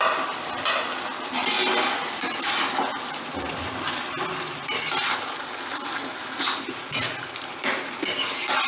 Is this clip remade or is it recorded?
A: recorded